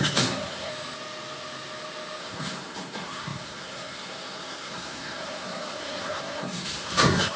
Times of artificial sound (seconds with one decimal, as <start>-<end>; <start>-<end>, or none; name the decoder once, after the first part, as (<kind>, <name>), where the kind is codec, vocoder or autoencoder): 0.0-0.7 (codec, SNAC); 2.2-7.4